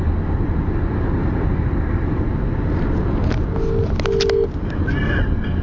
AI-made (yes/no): no